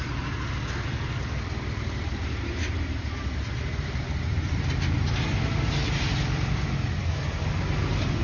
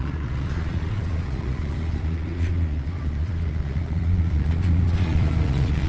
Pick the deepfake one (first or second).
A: second